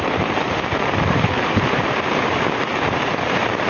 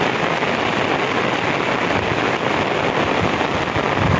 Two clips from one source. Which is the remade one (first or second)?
first